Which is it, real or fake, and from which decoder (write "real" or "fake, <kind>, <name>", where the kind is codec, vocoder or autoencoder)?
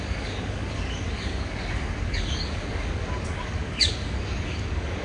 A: fake, codec, DAC